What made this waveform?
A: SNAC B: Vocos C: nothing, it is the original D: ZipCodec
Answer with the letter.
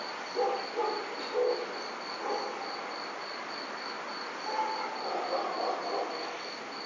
C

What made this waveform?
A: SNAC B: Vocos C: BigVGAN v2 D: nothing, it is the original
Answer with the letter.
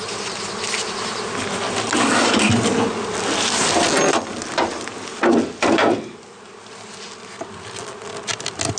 D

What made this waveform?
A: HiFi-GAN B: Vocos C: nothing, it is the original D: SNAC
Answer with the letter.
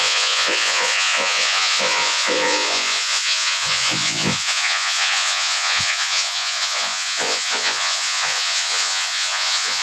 B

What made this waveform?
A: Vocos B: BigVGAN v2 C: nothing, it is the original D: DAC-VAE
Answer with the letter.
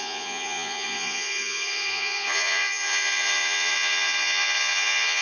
A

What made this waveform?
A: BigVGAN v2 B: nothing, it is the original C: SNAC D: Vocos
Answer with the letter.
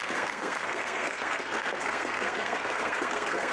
C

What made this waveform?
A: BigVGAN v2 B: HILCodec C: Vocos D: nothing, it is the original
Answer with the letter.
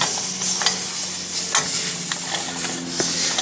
D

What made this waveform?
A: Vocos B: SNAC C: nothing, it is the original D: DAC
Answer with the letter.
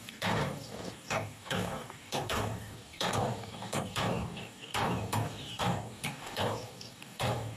D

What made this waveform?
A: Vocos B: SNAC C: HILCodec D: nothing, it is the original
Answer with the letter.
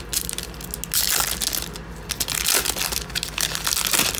D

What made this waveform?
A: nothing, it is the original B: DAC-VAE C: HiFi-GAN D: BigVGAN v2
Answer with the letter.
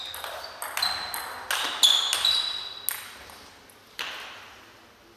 A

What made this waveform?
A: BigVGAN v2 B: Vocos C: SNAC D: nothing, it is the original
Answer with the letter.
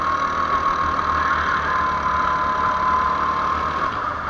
D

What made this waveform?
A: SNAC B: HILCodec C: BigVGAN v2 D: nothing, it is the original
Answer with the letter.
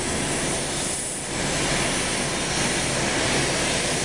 D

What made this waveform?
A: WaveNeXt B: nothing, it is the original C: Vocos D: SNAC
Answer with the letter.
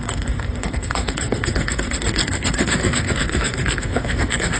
D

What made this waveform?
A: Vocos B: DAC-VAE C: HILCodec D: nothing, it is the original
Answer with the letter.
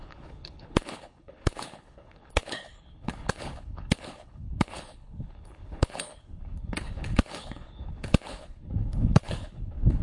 C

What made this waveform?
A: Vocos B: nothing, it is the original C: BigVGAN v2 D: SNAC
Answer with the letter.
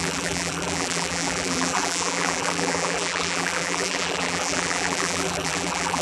C